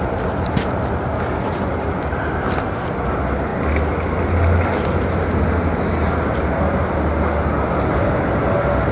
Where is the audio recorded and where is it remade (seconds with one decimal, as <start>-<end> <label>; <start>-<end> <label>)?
0.0-8.9 recorded